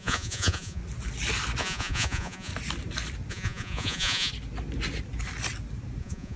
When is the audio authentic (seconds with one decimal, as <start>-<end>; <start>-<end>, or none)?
0.8-1.6; 2.5-3.3; 4.3-6.0